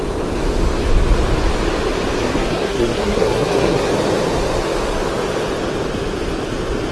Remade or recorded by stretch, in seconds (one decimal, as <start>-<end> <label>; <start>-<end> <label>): 0.0-2.2 recorded; 2.2-3.9 remade; 3.9-6.9 recorded

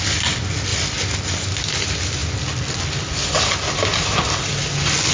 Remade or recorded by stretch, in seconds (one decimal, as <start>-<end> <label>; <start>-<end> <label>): 0.0-5.1 recorded

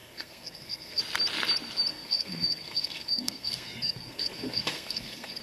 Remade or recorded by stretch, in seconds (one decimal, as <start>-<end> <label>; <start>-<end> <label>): 0.0-1.0 remade; 1.0-1.9 recorded; 1.9-5.4 remade

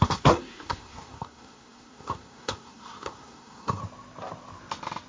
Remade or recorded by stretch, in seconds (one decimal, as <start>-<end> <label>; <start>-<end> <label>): 0.0-3.8 remade; 3.8-5.1 recorded

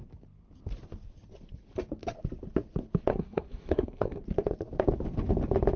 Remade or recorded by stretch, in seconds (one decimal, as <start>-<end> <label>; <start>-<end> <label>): 0.0-3.1 recorded; 3.1-4.2 remade; 4.2-5.8 recorded

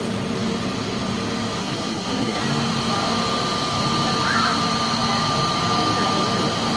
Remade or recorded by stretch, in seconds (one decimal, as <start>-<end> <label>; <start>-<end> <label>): 0.0-1.6 recorded; 1.6-2.4 remade; 2.4-6.8 recorded